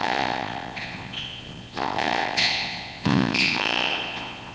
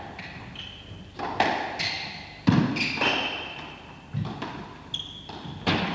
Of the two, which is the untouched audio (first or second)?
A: second